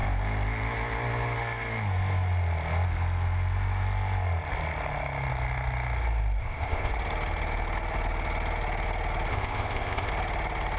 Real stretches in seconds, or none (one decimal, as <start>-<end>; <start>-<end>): 0.0-6.4; 6.9-9.3; 10.1-10.8